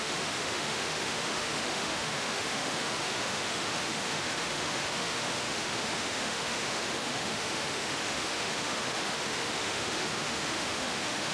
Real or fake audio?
fake